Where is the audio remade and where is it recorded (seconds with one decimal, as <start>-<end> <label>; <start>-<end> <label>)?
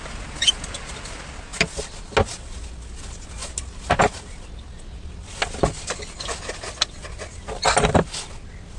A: 0.0-8.8 recorded